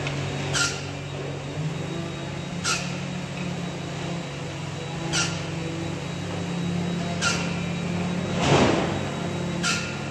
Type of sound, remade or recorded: recorded